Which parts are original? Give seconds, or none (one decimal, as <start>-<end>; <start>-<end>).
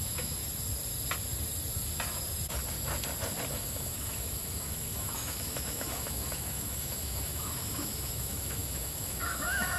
0.4-3.5